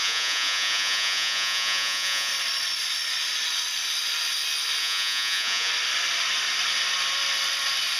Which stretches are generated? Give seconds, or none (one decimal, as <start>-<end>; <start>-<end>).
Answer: 0.0-2.3; 4.8-5.7